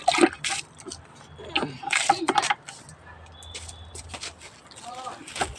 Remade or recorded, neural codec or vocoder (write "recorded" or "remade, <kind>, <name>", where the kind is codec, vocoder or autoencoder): recorded